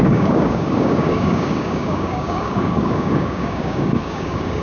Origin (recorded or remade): remade